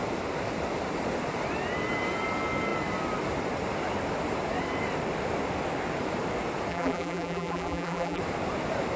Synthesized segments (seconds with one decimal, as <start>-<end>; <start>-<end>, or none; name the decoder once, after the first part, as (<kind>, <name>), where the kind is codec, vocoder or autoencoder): 6.7-8.2 (vocoder, BigVGAN v2)